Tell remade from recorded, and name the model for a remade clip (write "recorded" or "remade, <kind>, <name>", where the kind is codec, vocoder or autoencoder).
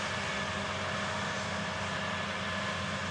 recorded